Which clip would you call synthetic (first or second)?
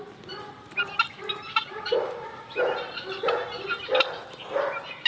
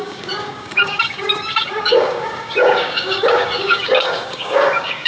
second